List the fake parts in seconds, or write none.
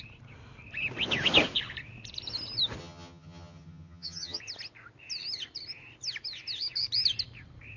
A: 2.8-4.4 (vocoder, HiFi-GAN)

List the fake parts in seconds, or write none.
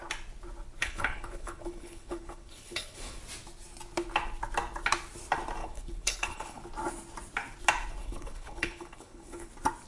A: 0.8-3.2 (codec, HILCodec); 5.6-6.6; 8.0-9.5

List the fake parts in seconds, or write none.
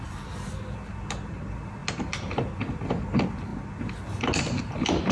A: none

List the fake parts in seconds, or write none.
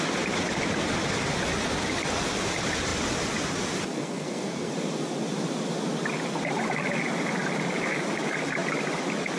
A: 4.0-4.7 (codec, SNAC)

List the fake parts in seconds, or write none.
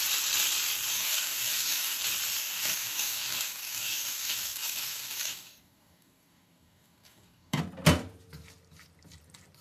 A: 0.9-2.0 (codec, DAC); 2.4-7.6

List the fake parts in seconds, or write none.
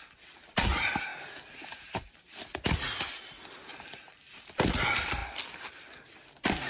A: none